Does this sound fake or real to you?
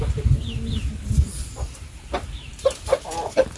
fake